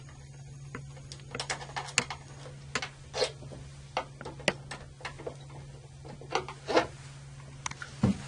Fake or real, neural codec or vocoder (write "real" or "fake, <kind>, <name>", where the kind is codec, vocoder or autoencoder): real